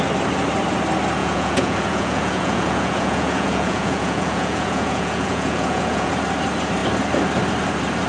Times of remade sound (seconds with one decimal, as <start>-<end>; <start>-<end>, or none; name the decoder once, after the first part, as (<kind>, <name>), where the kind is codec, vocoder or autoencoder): 1.2-6.1 (vocoder, Vocos)